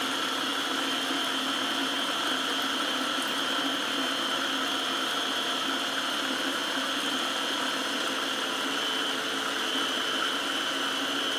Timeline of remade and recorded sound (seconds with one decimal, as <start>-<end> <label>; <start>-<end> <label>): 0.0-11.4 recorded